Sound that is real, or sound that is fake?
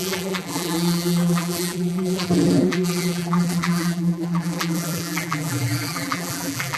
fake